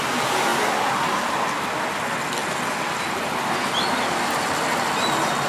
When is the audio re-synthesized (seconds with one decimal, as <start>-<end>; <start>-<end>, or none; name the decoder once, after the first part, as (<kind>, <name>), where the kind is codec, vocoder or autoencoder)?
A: none